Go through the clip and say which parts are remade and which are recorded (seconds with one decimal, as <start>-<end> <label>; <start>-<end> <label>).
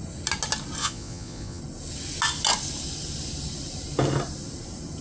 0.0-0.8 recorded; 0.8-1.6 remade; 1.6-5.0 recorded